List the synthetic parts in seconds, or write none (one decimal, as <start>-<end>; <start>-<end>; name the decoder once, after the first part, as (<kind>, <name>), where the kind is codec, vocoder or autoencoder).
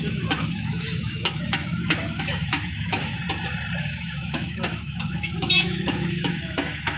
0.0-3.2 (autoencoder, DAC-VAE); 3.8-7.0